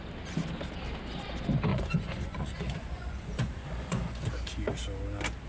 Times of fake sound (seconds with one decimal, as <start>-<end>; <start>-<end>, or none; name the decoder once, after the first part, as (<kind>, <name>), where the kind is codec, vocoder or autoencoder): 1.7-4.3 (vocoder, Vocos)